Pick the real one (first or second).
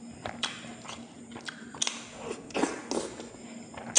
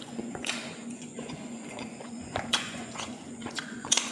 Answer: first